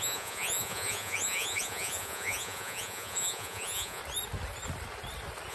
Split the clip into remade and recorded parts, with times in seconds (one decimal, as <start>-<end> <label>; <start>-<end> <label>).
0.0-4.0 remade; 4.0-5.5 recorded